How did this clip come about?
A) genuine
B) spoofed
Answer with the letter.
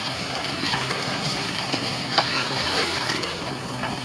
B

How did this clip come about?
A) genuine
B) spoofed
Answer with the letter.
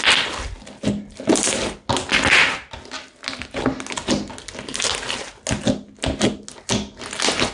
A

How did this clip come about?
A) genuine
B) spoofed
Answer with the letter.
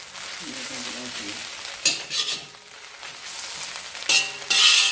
A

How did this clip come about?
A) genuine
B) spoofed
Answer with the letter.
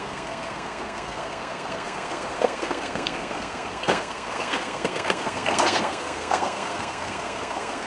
B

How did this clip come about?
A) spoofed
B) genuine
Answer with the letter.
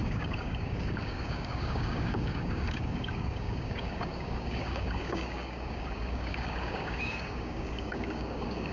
A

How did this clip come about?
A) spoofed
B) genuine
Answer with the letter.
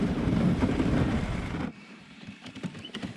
A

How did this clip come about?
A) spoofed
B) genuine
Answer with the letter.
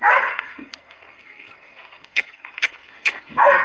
A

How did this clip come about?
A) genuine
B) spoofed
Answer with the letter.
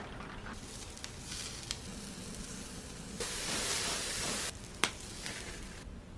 A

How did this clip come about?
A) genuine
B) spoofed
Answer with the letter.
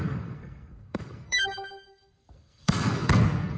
B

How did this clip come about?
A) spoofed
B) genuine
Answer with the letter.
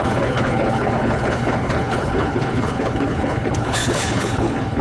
A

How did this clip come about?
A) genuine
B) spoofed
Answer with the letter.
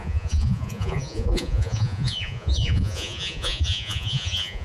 B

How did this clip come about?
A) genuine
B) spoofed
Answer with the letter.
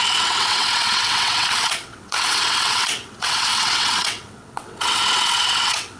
B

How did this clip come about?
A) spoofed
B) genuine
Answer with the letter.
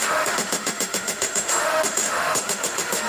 A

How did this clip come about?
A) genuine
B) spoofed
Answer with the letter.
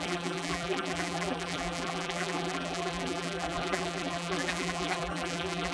B